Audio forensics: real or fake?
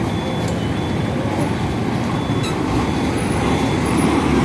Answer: real